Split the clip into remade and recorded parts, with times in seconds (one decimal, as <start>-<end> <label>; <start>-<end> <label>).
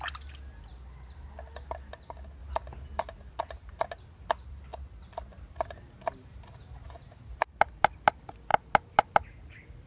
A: 0.0-9.9 recorded